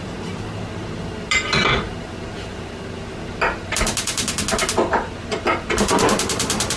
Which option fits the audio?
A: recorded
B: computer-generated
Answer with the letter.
A